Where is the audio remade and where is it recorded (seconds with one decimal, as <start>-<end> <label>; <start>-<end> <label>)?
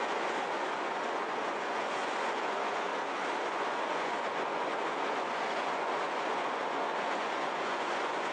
0.0-2.9 remade; 2.9-3.5 recorded; 3.5-8.3 remade